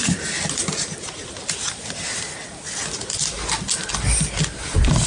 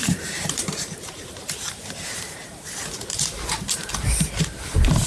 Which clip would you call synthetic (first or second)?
second